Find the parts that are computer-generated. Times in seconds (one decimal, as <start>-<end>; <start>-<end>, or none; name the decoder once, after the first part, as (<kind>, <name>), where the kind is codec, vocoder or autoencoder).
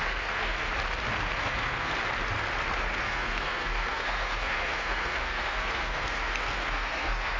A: 0.0-0.7 (codec, SNAC); 1.4-1.9; 3.0-7.4